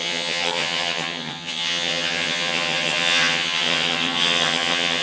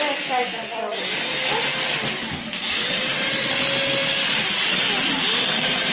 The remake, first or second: first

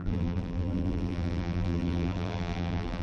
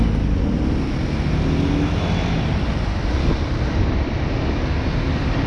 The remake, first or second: first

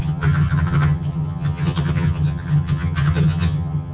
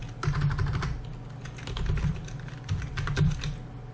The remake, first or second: first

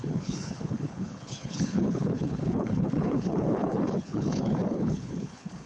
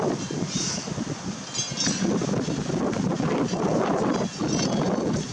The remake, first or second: first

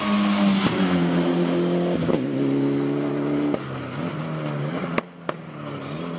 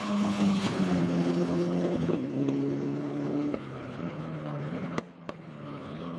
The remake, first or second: second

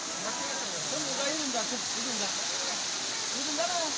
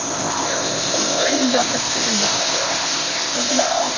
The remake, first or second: second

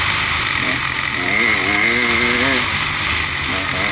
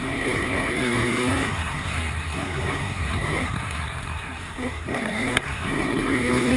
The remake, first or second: second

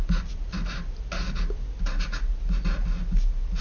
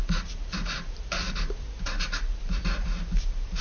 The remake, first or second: second